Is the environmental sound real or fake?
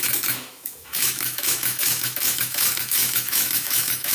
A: fake